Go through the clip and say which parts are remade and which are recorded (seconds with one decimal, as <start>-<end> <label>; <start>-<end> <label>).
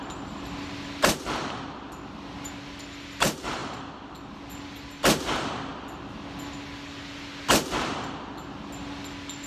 0.0-9.5 recorded